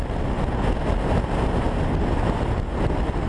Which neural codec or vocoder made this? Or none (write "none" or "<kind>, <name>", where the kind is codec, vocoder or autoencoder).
none